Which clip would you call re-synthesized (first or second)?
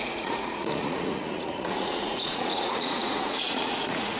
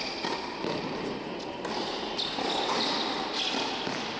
first